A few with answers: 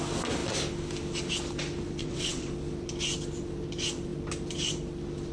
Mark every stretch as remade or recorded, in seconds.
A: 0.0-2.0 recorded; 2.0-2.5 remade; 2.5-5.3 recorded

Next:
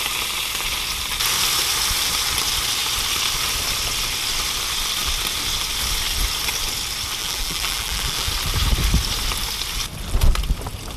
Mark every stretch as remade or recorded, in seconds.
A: 0.0-7.2 recorded; 7.2-8.3 remade; 8.3-11.0 recorded

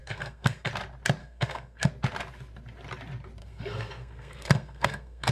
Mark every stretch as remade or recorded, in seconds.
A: 0.0-0.7 remade; 0.7-1.2 recorded; 1.2-1.9 remade; 1.9-3.4 recorded; 3.4-5.3 remade

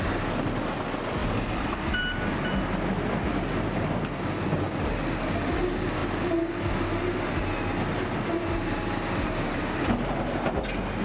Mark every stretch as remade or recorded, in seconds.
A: 0.0-11.0 recorded

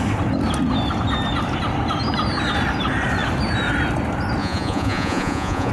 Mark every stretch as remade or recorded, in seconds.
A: 0.0-4.4 recorded; 4.4-5.7 remade

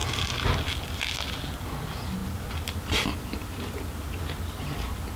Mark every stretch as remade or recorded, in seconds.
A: 0.0-5.2 recorded

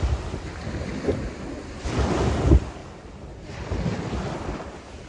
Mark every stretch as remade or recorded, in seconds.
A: 0.0-5.1 recorded